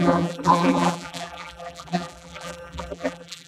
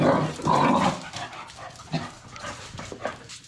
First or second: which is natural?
second